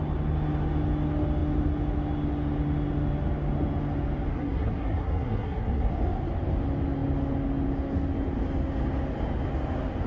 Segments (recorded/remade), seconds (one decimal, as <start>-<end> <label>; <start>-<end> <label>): 0.0-4.3 recorded; 4.3-5.9 remade; 5.9-10.1 recorded